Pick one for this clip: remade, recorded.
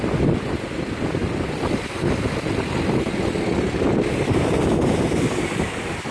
recorded